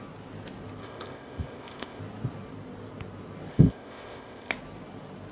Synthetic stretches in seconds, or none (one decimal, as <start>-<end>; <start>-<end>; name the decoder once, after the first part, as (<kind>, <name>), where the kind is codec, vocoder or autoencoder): 0.8-2.0 (codec, ZipCodec); 3.5-4.5